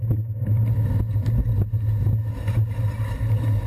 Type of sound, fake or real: real